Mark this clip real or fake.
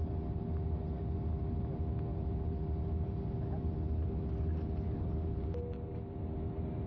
real